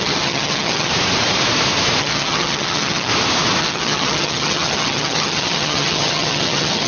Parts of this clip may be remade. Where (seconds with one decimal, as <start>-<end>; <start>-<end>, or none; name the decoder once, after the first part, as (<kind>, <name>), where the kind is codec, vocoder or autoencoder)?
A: 0.0-0.9 (vocoder, HiFi-GAN); 2.0-3.1; 3.6-6.9